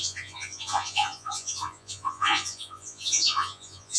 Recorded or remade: remade